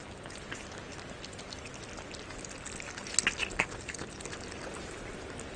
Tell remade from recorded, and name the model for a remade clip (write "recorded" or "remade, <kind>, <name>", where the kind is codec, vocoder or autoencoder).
recorded